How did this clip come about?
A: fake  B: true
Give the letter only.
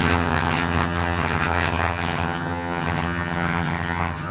A